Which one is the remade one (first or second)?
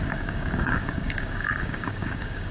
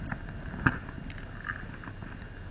first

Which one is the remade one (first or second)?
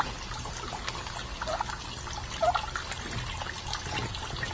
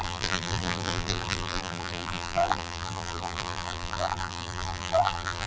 second